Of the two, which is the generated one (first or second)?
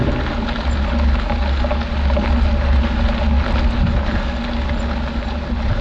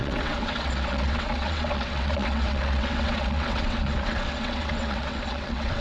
second